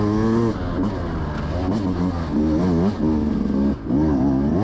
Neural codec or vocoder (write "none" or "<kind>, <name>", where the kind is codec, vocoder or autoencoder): none